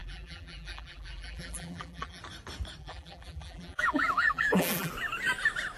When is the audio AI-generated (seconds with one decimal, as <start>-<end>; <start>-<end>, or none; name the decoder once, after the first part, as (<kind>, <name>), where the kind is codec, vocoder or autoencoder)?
0.0-2.2 (vocoder, BigVGAN v2); 2.8-4.9